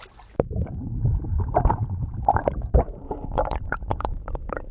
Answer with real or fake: fake